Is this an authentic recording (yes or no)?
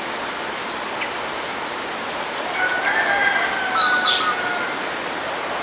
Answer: yes